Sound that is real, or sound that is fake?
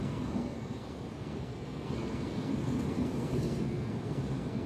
fake